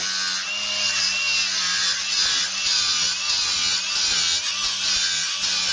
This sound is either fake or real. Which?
real